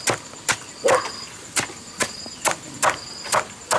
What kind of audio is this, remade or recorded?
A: recorded